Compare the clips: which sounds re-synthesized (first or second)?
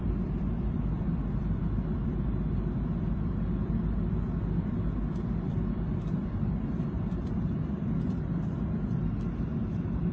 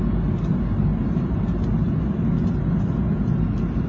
first